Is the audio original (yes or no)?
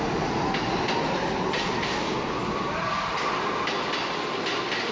yes